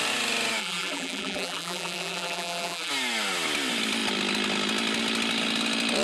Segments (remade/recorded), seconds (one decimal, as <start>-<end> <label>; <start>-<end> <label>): 0.0-0.6 recorded; 0.6-2.9 remade; 2.9-6.0 recorded